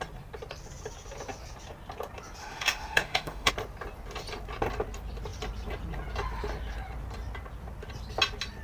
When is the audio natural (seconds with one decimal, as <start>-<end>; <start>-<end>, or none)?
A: 0.0-2.4; 3.5-8.6